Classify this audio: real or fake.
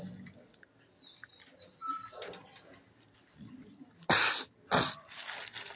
real